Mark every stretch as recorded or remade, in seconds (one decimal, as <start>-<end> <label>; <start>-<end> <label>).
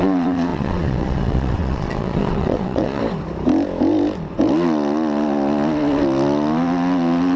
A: 0.0-3.0 remade; 3.0-7.4 recorded